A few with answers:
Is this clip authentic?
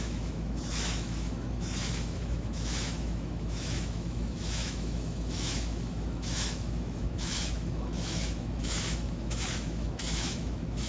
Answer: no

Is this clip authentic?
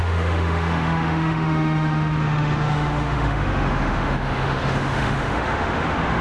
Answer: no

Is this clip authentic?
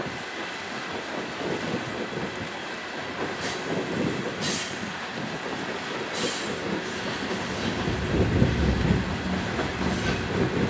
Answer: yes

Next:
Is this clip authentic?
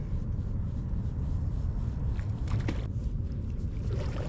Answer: yes